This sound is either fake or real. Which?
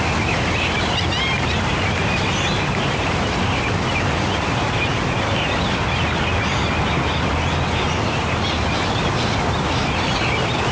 real